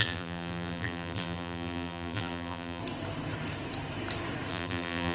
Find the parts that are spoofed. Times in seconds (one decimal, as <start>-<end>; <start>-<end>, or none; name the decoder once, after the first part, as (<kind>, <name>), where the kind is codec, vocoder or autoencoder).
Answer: 0.0-2.8 (vocoder, BigVGAN v2); 4.5-5.1